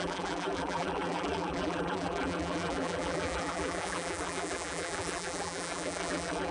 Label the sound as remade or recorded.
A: remade